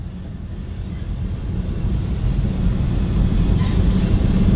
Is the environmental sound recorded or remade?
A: recorded